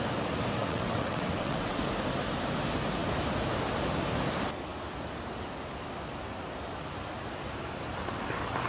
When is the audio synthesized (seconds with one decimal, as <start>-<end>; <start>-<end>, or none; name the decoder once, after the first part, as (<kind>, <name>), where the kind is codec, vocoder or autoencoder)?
0.6-1.8 (vocoder, WaveNeXt)